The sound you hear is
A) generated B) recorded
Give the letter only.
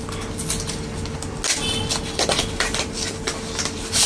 B